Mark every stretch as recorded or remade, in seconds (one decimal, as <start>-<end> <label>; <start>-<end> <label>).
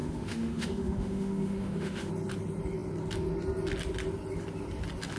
0.0-2.1 remade; 2.1-5.2 recorded